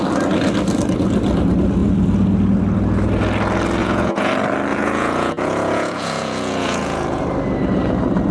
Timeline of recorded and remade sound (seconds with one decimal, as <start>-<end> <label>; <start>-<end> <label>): 0.0-3.8 recorded; 3.8-4.3 remade; 4.3-4.7 recorded; 4.7-7.2 remade; 7.2-8.3 recorded